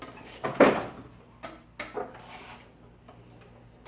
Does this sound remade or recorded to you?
recorded